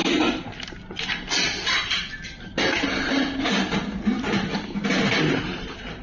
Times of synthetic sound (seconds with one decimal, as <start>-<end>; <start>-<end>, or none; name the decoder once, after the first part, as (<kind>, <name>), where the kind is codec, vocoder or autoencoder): none

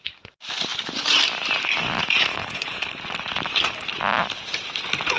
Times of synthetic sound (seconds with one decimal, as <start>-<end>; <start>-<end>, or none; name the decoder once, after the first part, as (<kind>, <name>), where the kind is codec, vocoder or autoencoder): 2.3-3.0 (codec, HILCodec)